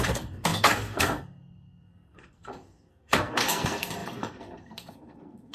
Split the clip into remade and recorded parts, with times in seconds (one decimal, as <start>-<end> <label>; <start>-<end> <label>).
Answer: 0.0-5.5 remade